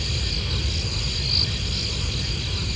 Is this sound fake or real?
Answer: real